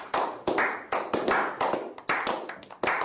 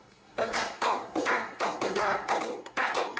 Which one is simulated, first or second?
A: second